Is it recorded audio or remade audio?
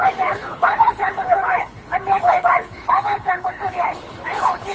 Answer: remade